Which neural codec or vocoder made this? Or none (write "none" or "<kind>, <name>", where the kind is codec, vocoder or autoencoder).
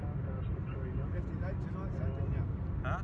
none